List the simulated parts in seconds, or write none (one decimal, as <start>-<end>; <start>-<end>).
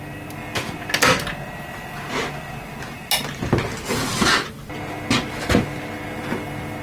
none